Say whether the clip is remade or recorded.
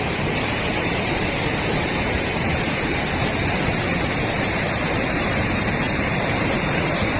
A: remade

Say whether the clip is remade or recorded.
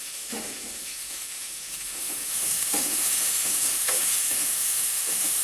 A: remade